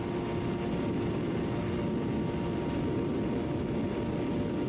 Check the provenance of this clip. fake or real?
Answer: real